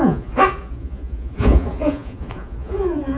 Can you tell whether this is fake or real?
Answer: fake